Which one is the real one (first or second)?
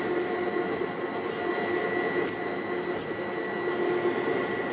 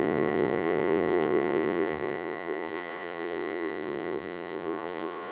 first